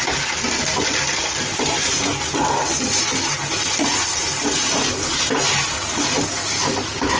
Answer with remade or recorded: recorded